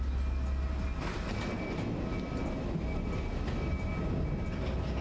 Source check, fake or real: real